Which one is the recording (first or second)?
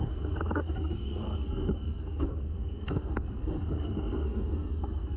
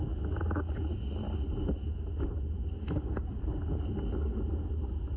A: second